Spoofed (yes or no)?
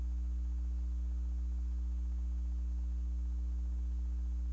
no